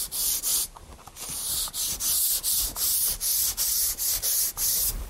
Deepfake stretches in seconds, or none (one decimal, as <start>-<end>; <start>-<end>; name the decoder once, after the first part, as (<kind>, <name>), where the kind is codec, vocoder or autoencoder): 0.0-0.5 (vocoder, BigVGAN v2); 2.5-5.1

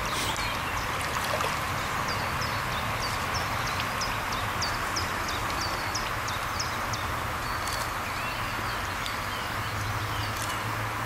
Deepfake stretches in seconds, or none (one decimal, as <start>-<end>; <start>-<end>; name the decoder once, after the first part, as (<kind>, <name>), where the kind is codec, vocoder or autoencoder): none

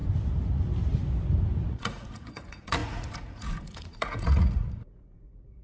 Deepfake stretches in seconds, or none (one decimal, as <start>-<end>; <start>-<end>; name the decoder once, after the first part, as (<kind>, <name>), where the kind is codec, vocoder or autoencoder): 1.7-5.6 (vocoder, Vocos)

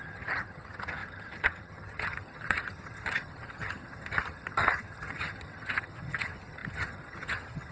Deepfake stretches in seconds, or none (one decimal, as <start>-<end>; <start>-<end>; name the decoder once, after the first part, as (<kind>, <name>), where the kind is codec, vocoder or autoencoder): 0.0-7.7 (vocoder, HiFi-GAN)

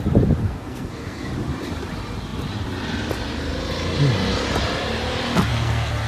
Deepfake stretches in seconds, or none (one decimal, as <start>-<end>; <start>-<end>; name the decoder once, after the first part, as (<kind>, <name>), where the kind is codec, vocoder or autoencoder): 0.4-1.3 (codec, SNAC); 5.5-6.1

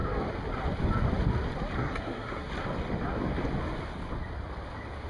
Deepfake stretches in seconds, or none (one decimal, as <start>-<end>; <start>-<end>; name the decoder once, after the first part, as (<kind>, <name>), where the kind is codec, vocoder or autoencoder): 1.8-2.5 (codec, SNAC)

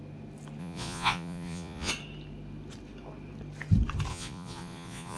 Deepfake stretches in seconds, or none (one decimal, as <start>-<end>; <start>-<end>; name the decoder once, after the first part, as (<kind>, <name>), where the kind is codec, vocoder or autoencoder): 0.6-1.9 (vocoder, Vocos); 4.1-5.2

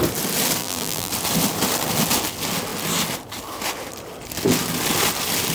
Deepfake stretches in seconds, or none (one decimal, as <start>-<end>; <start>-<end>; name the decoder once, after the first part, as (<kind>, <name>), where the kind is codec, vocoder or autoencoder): 0.6-1.1 (vocoder, BigVGAN v2)